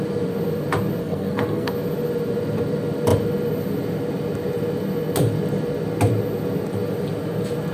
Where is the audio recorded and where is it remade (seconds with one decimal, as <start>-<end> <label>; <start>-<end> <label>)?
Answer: 0.0-1.0 recorded; 1.0-1.7 remade; 1.7-7.7 recorded

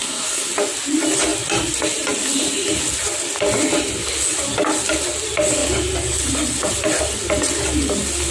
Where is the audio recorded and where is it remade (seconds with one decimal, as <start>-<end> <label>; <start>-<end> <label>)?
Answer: 0.0-0.5 remade; 0.5-8.3 recorded

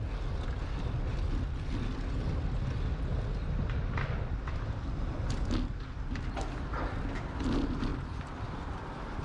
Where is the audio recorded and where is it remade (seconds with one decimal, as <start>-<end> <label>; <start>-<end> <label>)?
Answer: 0.0-3.1 recorded; 3.1-5.5 remade; 5.5-7.9 recorded; 7.9-8.6 remade; 8.6-9.2 recorded

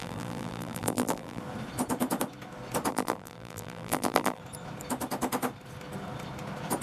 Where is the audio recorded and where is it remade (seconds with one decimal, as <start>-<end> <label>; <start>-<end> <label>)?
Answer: 0.0-1.4 remade; 1.4-2.9 recorded; 2.9-4.4 remade; 4.4-6.8 recorded

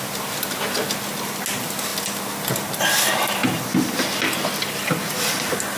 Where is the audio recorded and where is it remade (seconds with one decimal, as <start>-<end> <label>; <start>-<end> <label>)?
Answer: 0.0-5.8 recorded

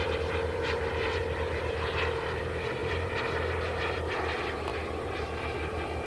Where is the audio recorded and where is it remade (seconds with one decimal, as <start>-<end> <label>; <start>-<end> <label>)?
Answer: 0.0-1.2 remade; 1.2-1.7 recorded; 1.7-6.1 remade

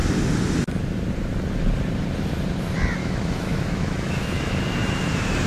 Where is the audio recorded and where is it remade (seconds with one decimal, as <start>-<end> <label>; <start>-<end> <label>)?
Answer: 0.0-3.0 recorded; 3.0-4.6 remade; 4.6-5.5 recorded

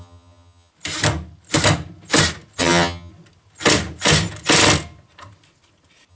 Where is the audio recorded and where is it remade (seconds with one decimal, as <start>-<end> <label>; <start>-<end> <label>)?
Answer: 0.0-0.7 remade; 0.7-2.6 recorded; 2.6-3.1 remade; 3.1-6.1 recorded